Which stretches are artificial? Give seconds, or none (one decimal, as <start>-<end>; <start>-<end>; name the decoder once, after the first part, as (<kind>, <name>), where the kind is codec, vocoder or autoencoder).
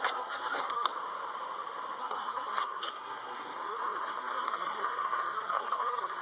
0.0-0.9 (codec, SNAC); 2.0-6.2